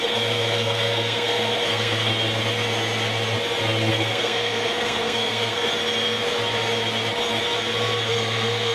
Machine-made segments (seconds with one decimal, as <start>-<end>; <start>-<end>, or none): 0.0-2.1; 3.9-5.7; 8.1-8.7